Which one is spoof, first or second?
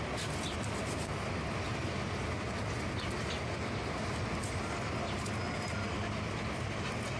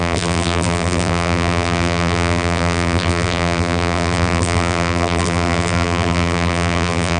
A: second